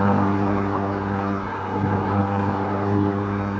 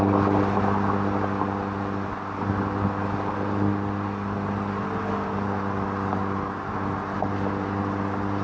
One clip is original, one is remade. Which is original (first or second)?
second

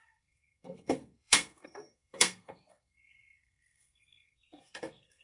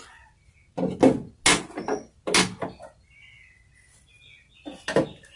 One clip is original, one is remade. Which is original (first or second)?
second